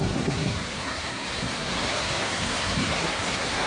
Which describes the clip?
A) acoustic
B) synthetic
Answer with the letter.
B